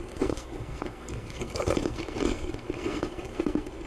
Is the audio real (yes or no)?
no